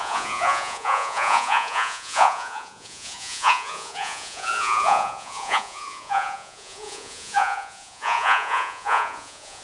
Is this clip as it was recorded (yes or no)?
no